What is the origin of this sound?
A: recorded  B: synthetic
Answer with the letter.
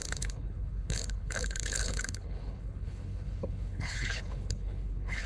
B